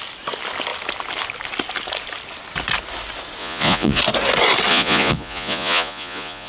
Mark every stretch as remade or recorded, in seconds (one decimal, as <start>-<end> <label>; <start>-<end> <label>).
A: 0.0-3.4 recorded; 3.4-4.0 remade; 4.0-4.7 recorded; 4.7-6.5 remade